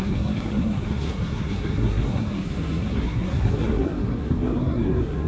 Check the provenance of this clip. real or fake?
fake